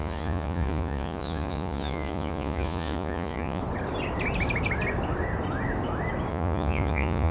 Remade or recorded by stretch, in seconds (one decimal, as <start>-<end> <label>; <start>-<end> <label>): 0.0-3.6 remade; 3.6-6.3 recorded; 6.3-7.3 remade